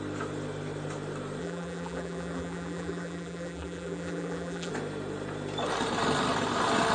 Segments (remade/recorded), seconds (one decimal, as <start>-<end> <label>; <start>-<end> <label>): 0.0-1.4 recorded; 1.4-4.7 remade; 4.7-6.9 recorded